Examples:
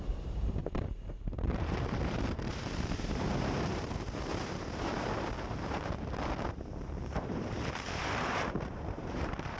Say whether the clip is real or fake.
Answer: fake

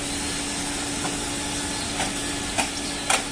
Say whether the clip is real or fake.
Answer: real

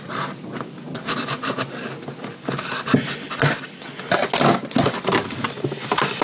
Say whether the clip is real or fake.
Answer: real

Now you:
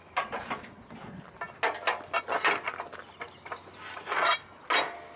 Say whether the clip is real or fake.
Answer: real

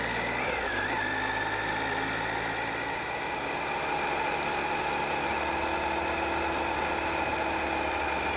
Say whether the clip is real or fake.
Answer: real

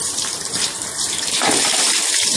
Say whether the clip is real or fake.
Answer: fake